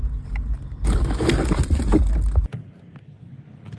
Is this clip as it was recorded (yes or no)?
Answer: yes